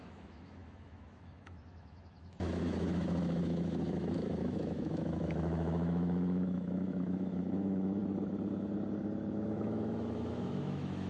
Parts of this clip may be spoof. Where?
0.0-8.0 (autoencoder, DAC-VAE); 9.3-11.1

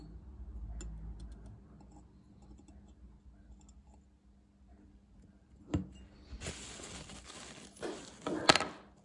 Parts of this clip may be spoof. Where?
none